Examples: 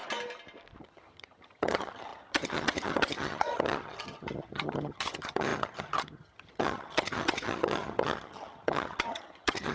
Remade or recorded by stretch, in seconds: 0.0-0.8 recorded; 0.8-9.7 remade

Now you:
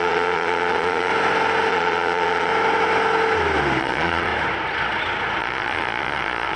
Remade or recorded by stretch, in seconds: 0.0-1.1 remade; 1.1-1.7 recorded; 1.7-2.5 remade; 2.5-3.8 recorded; 3.8-4.3 remade; 4.3-5.4 recorded; 5.4-6.6 remade

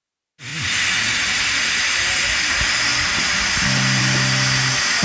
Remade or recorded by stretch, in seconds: 0.0-5.0 recorded

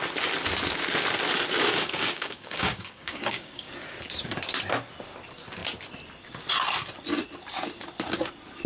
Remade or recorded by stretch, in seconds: 0.0-1.7 recorded; 1.7-3.7 remade; 3.7-8.7 recorded

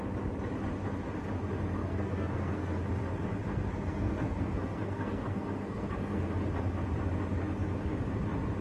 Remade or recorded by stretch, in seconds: 0.0-1.8 recorded; 1.8-2.8 remade; 2.8-3.5 recorded; 3.5-6.3 remade; 6.3-8.6 recorded

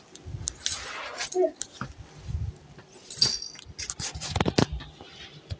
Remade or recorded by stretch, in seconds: 0.0-5.6 recorded

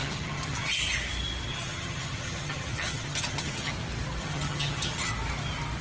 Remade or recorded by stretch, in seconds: 0.0-0.8 remade; 0.8-1.5 recorded; 1.5-3.7 remade; 3.7-4.2 recorded; 4.2-5.1 remade; 5.1-5.8 recorded